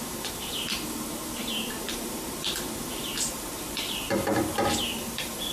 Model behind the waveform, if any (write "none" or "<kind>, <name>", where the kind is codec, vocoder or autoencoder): vocoder, BigVGAN v2